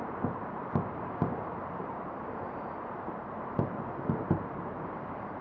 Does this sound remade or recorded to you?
remade